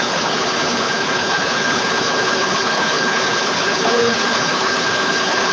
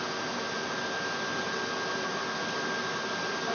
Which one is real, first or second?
second